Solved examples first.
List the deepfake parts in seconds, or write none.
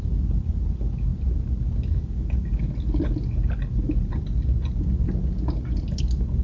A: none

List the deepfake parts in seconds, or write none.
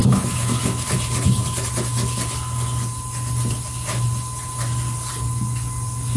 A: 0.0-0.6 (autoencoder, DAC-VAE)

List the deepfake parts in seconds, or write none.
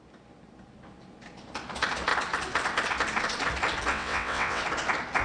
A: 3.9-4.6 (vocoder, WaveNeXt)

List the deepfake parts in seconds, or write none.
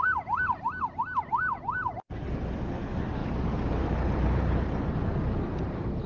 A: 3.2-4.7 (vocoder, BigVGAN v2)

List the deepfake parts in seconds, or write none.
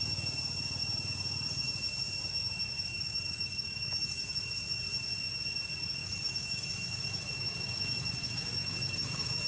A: 2.9-4.8 (autoencoder, DAC-VAE); 6.0-9.5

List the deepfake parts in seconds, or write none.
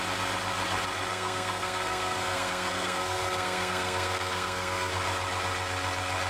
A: 1.1-4.9 (codec, SNAC)